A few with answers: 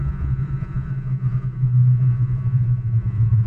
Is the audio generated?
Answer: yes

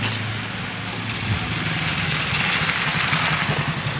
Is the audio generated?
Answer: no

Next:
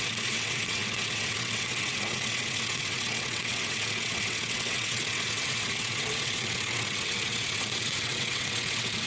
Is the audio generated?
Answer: yes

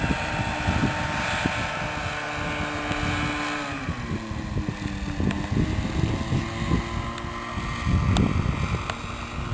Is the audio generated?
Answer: no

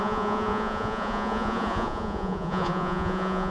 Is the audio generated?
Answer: yes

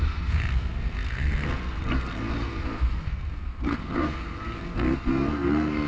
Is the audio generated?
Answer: yes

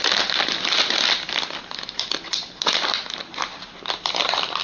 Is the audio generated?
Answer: yes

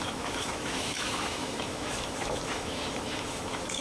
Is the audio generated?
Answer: yes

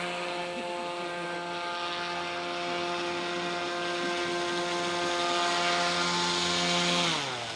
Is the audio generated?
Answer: no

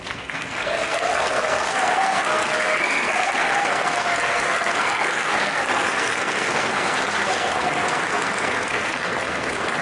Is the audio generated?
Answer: yes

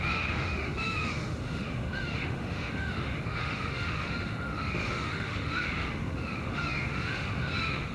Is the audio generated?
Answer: yes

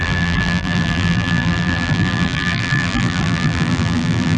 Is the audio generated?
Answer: yes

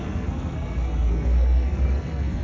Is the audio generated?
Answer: yes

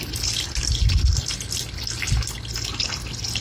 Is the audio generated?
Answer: no